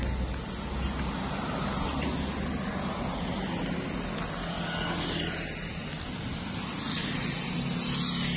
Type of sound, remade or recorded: recorded